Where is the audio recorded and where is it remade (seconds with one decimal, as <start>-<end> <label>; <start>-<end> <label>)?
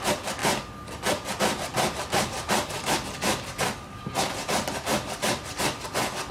0.0-6.3 recorded